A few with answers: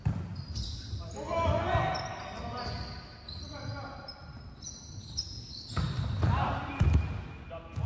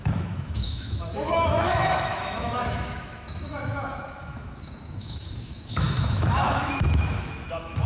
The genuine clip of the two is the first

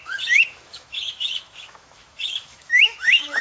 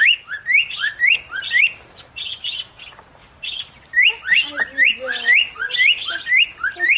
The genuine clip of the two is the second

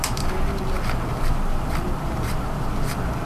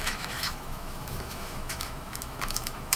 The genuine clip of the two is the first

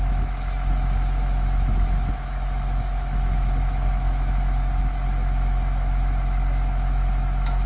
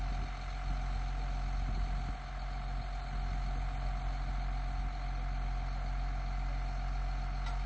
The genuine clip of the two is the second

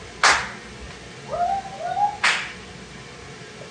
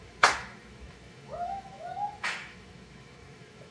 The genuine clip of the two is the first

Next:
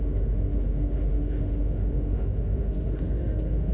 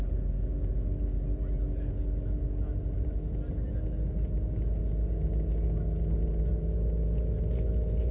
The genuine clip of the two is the second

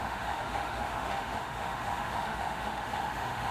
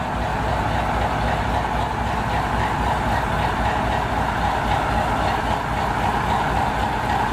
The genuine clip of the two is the second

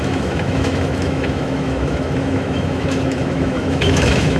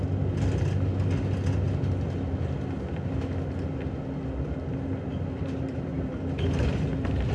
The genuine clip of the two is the second